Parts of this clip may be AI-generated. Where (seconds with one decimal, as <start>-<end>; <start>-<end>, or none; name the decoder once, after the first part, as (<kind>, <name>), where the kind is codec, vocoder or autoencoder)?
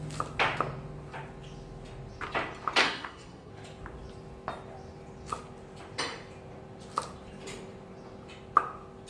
2.8-3.5 (codec, SNAC)